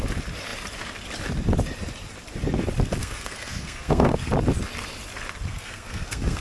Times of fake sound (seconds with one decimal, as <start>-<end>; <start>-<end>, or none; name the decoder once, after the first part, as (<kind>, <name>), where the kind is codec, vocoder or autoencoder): 3.0-4.3 (codec, SNAC); 5.5-6.4